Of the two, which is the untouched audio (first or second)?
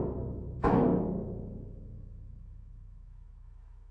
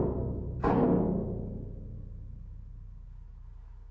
second